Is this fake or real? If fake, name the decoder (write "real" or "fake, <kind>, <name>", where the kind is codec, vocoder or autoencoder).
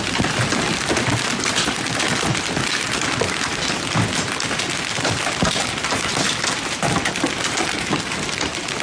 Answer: real